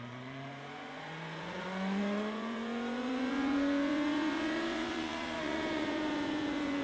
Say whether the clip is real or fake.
fake